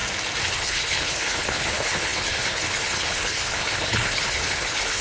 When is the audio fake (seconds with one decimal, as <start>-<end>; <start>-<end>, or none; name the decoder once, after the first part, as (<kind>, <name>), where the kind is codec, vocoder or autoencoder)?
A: 0.5-5.0 (codec, HILCodec)